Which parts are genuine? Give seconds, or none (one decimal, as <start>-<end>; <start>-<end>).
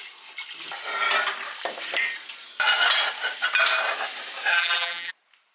0.0-4.5; 5.1-5.5